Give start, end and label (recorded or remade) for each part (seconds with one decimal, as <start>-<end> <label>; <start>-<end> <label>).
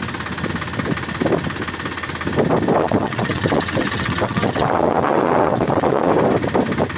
0.0-2.8 recorded; 2.8-6.1 remade; 6.1-7.0 recorded